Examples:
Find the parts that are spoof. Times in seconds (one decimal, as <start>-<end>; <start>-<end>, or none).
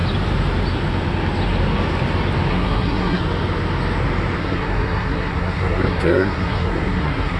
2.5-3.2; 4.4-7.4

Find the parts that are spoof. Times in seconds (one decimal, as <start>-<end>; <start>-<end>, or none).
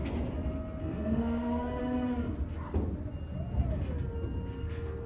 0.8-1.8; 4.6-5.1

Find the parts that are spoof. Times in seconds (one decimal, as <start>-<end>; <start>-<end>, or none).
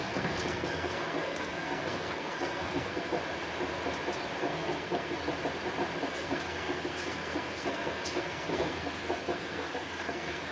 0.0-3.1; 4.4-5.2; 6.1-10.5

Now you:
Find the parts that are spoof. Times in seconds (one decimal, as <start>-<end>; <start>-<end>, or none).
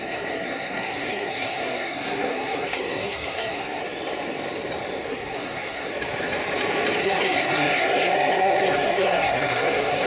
0.0-3.8; 5.1-5.9; 7.0-10.1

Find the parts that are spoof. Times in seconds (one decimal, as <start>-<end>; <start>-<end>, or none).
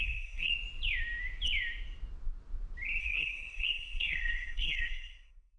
0.0-0.5; 3.0-5.6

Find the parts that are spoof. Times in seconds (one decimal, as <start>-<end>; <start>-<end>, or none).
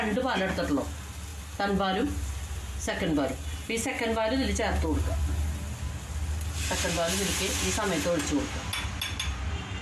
none